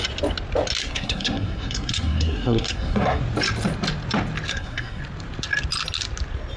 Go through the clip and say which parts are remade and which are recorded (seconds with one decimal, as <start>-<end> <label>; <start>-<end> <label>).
0.0-0.8 recorded; 0.8-3.2 remade; 3.2-4.5 recorded; 4.5-5.0 remade; 5.0-6.6 recorded